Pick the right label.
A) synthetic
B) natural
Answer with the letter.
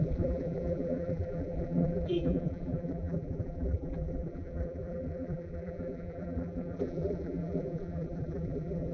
A